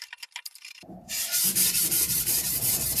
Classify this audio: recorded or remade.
remade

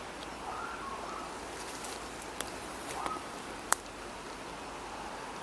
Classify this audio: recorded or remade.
remade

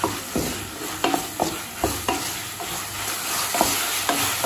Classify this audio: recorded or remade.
recorded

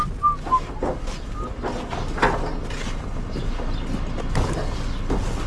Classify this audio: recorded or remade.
recorded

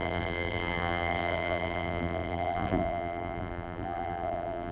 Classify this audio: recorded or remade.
remade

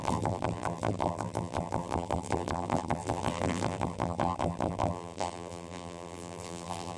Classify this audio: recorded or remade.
remade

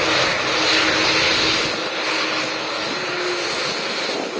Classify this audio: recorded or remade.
recorded